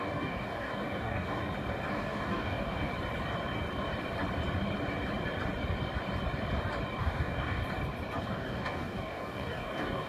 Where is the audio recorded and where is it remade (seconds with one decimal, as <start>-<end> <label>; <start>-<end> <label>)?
0.0-1.4 remade; 1.4-1.9 recorded; 1.9-2.9 remade; 2.9-7.0 recorded; 7.0-7.6 remade; 7.6-8.2 recorded; 8.2-10.1 remade